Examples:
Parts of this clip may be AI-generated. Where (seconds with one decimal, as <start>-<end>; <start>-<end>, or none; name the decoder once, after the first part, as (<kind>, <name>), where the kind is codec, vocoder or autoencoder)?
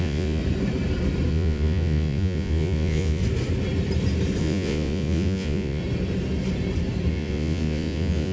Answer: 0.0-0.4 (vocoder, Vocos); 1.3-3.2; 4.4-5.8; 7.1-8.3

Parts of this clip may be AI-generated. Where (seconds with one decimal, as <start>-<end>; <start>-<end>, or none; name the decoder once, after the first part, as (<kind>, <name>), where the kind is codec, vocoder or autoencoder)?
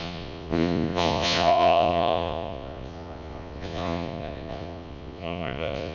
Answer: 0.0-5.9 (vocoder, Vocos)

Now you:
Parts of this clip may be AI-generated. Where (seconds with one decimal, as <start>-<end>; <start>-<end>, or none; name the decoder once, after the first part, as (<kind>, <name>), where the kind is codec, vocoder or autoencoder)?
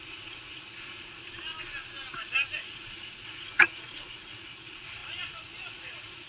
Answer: 0.0-1.2 (vocoder, Vocos); 2.6-6.3